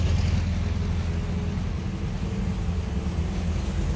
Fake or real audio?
real